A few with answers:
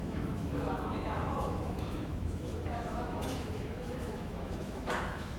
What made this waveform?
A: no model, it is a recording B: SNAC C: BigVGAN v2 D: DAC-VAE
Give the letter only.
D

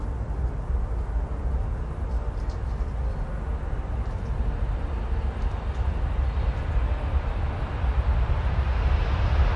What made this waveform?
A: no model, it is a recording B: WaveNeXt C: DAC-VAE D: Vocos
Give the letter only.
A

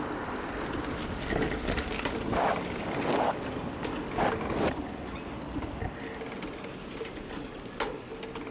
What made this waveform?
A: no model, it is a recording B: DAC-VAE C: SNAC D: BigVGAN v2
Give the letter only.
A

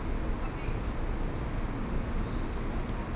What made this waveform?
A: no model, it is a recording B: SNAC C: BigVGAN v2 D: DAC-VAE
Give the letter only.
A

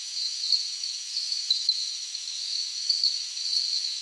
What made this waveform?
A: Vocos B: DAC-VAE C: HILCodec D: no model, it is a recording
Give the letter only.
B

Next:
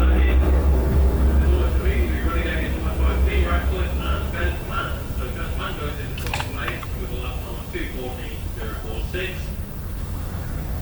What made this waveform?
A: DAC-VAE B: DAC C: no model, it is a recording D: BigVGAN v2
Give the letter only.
A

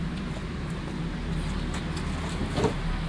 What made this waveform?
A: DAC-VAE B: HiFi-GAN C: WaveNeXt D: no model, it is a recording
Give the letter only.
D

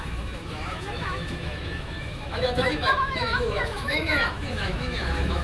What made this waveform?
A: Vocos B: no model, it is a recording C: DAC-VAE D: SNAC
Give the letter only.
C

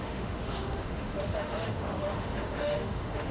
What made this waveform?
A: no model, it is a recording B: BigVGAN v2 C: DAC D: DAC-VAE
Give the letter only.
D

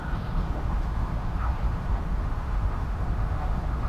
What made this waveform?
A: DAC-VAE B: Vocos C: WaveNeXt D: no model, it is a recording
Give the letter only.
A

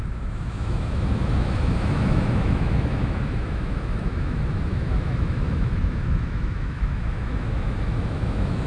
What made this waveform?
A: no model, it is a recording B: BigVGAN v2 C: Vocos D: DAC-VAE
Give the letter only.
D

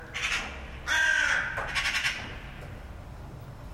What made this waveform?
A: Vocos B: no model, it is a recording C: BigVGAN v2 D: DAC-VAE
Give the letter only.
B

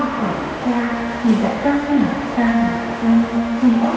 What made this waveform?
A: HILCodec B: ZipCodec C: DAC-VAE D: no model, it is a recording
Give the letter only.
C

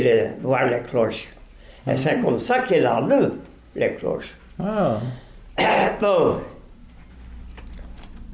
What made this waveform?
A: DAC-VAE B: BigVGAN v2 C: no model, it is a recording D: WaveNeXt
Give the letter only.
C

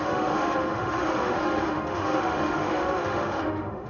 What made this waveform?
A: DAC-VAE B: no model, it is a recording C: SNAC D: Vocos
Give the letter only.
A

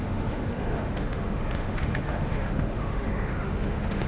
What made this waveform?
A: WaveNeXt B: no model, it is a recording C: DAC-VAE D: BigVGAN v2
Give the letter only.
C